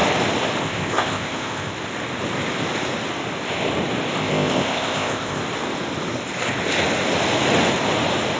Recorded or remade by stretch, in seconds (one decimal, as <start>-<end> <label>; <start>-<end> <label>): 0.0-0.6 recorded; 0.6-1.7 remade; 1.7-4.2 recorded; 4.2-5.4 remade; 5.4-8.4 recorded